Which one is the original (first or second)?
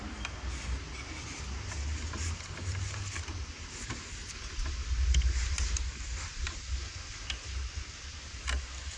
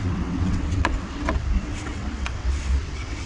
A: first